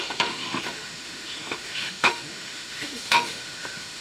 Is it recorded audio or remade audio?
remade